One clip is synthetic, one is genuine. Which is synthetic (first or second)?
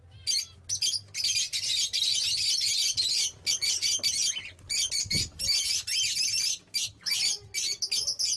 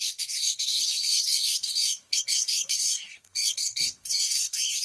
second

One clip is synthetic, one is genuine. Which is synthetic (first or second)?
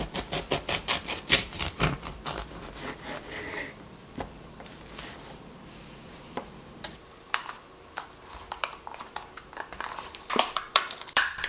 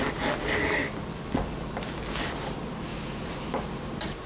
first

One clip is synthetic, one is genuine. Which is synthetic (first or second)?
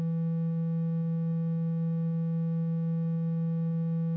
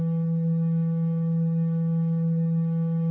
second